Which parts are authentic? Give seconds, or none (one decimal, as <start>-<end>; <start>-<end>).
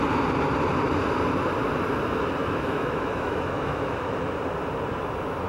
0.0-2.4; 4.1-5.5